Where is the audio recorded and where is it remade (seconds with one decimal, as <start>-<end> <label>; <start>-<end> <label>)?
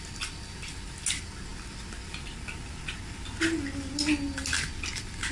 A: 0.0-5.3 recorded